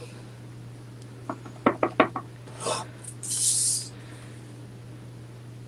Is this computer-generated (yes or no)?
no